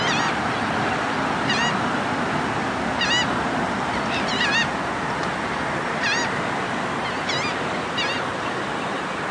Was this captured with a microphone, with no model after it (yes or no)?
yes